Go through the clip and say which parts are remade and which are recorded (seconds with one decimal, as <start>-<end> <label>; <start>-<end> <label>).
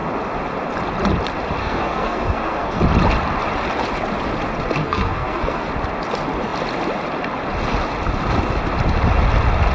0.0-1.6 recorded; 1.6-2.8 remade; 2.8-4.8 recorded; 4.8-5.7 remade; 5.7-9.7 recorded